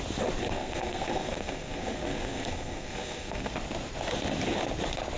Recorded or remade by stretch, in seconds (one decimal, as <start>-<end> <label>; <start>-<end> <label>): 0.0-0.4 recorded; 0.4-3.5 remade; 3.5-5.2 recorded